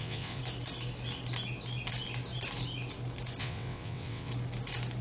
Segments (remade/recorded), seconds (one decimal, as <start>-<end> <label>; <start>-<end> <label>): 0.0-0.4 remade; 0.4-3.4 recorded; 3.4-4.3 remade; 4.3-5.0 recorded